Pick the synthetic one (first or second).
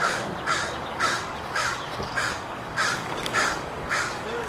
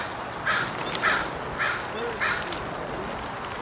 first